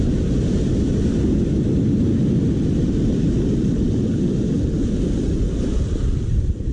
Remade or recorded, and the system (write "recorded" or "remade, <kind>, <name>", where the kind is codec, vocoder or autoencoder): recorded